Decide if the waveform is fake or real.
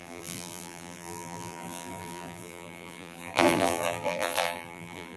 fake